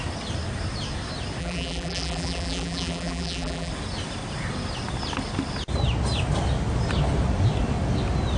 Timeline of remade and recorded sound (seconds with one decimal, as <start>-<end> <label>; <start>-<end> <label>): 0.0-1.4 recorded; 1.4-3.7 remade; 3.7-8.4 recorded